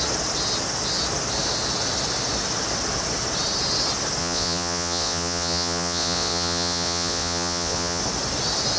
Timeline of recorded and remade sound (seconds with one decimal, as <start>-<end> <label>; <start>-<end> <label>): 0.0-4.2 recorded; 4.2-8.0 remade; 8.0-8.8 recorded